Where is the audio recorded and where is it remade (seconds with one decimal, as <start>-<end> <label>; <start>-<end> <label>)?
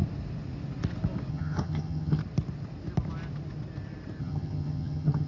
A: 0.0-1.3 recorded; 1.3-2.2 remade; 2.2-4.2 recorded; 4.2-5.3 remade